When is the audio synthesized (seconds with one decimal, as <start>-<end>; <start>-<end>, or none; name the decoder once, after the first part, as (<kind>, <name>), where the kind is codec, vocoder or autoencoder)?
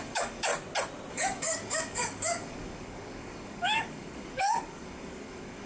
0.0-0.5 (codec, DAC); 1.1-5.7